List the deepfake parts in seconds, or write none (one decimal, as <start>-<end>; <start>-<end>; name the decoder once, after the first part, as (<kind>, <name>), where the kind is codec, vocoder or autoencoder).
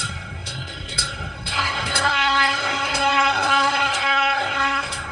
0.0-5.1 (codec, SNAC)